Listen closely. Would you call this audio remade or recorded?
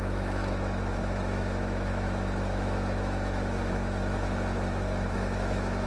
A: remade